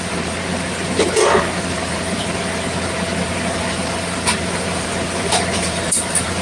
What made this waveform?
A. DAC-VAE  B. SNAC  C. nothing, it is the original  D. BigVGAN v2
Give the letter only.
D